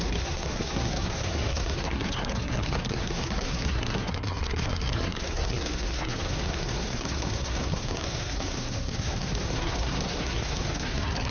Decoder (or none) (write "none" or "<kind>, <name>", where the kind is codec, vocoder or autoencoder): codec, SNAC